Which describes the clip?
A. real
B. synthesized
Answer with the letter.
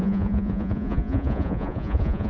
B